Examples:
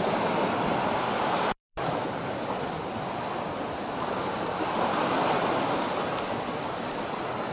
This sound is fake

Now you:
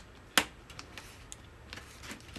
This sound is real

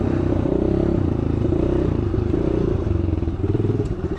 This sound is fake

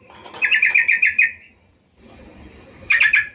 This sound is real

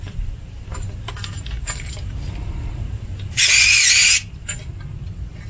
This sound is real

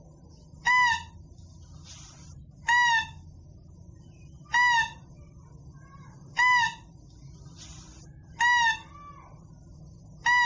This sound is real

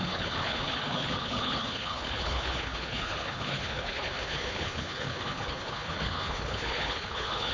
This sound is fake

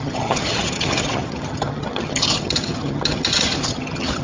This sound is fake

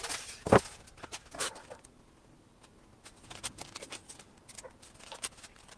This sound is real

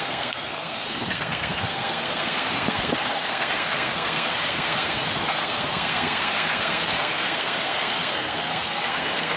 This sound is fake